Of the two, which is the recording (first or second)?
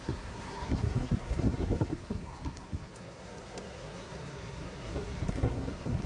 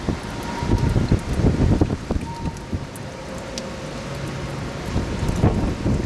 second